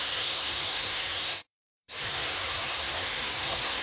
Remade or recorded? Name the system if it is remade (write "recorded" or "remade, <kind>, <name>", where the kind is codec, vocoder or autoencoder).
remade, codec, SNAC